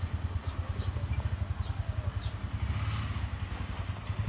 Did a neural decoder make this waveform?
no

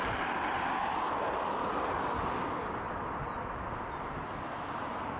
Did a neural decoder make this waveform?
no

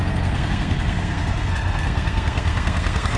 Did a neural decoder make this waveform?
yes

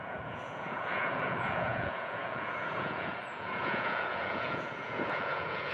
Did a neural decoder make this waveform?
yes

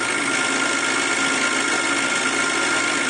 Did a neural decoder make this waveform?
no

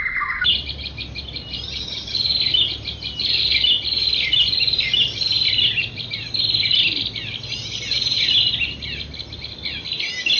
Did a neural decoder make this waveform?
no